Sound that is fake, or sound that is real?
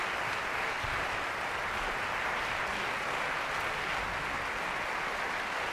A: real